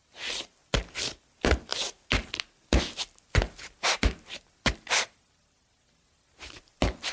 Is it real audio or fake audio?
real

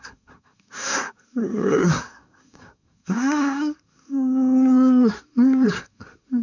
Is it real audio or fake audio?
fake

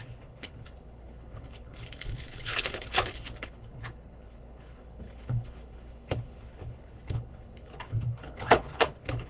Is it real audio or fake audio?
fake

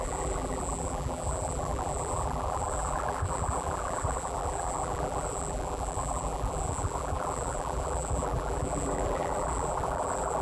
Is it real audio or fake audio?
fake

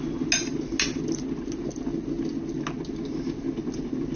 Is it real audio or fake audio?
real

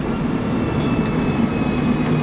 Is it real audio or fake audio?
real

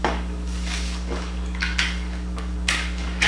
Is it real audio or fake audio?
fake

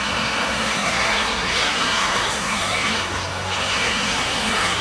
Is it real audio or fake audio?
fake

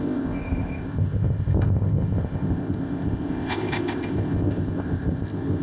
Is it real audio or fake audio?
fake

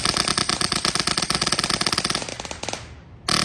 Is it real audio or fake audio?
real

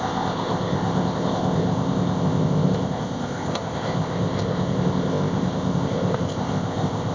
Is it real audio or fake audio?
fake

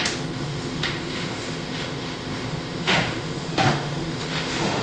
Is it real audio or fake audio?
fake